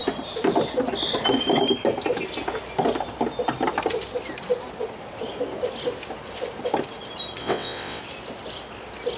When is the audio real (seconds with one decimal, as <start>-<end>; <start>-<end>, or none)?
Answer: 0.0-7.4; 8.0-9.2